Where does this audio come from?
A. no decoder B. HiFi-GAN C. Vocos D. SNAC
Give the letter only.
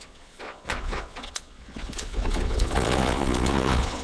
C